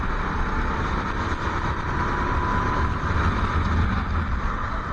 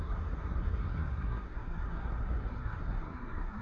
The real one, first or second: first